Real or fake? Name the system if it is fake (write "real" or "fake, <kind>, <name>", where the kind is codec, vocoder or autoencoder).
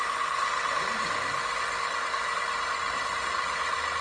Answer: real